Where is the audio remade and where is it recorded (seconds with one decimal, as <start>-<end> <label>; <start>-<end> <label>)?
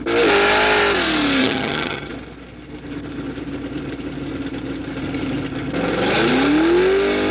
0.0-1.4 recorded; 1.4-2.1 remade; 2.1-7.3 recorded